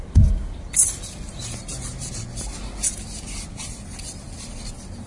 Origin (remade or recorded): recorded